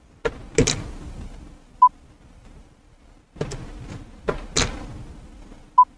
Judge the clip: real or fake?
real